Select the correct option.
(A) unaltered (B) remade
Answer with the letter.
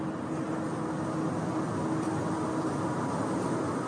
A